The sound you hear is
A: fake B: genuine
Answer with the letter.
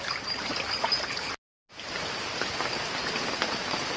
B